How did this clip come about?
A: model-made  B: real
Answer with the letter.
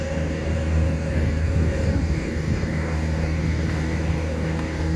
A